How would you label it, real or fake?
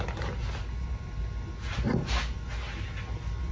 real